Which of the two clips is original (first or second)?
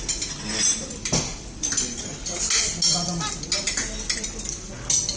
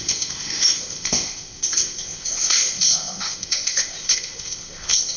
first